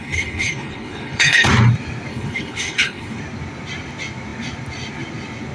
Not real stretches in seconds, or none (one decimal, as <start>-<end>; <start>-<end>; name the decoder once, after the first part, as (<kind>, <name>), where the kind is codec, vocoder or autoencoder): 0.0-1.5 (codec, HILCodec); 2.1-3.2